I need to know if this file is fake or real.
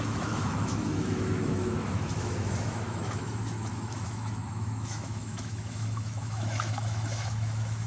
fake